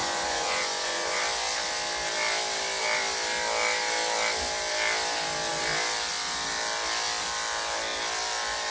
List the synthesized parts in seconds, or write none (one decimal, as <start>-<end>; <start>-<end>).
0.0-1.2